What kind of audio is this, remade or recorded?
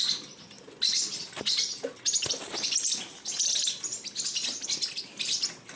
recorded